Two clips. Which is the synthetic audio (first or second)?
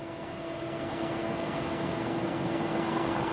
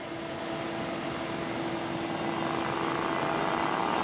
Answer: first